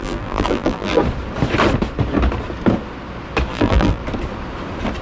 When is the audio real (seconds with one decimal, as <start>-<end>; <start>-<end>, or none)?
1.0-3.5; 4.0-5.0